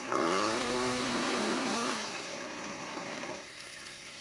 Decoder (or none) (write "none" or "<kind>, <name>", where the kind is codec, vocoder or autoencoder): codec, SNAC